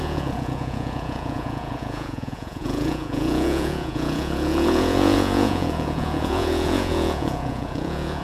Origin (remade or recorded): remade